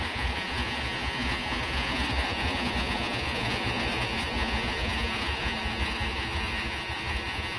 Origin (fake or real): fake